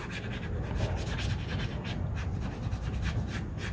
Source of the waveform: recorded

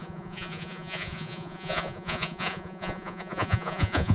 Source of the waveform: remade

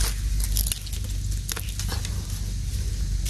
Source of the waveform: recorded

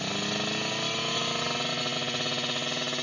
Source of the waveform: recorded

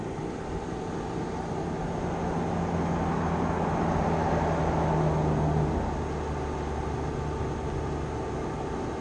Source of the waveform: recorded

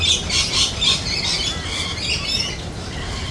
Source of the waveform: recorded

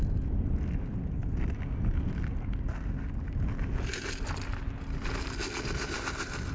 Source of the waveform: recorded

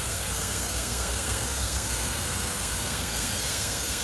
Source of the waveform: remade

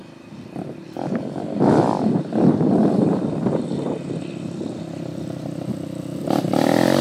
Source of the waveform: recorded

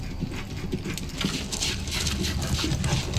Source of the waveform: recorded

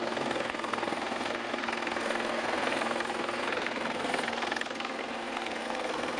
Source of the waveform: remade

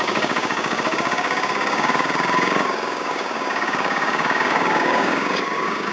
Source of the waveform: remade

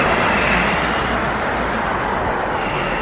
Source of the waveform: recorded